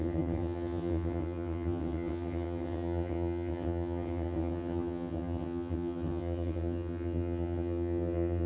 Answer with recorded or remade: remade